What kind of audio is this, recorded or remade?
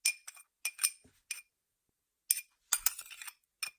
recorded